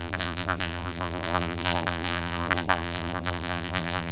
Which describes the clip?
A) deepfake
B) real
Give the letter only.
A